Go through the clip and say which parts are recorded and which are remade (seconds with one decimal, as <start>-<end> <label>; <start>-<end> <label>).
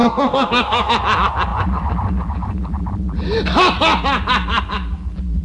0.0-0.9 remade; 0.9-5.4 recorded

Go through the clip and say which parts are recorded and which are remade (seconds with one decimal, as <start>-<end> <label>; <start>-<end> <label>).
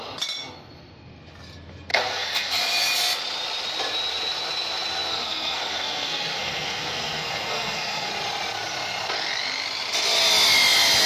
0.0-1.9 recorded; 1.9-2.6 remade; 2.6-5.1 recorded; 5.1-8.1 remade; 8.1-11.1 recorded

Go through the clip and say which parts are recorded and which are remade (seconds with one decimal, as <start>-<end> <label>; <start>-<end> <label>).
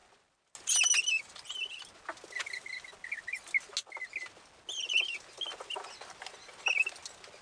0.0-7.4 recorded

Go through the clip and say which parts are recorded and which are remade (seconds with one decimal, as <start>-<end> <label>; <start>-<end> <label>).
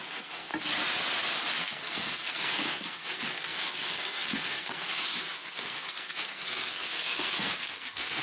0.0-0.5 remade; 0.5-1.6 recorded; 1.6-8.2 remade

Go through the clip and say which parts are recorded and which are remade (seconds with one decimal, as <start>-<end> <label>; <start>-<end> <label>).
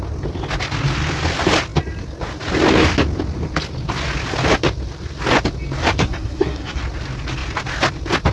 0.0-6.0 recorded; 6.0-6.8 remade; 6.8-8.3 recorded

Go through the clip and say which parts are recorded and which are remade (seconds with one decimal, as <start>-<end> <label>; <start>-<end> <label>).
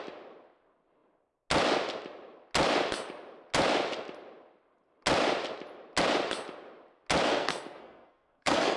0.0-7.3 recorded; 7.3-8.8 remade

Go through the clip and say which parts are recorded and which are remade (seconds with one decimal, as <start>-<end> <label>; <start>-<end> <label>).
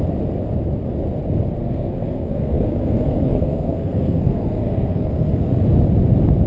0.0-1.6 recorded; 1.6-5.5 remade; 5.5-6.5 recorded